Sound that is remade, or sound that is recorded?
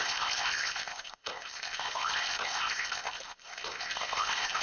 remade